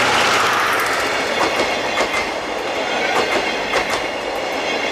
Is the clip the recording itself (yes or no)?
yes